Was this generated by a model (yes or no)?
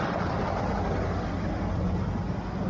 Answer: yes